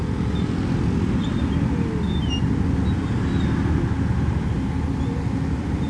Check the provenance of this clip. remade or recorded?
recorded